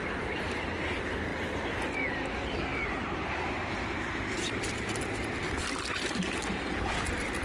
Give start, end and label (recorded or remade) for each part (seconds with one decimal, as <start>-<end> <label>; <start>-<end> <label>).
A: 0.0-7.4 recorded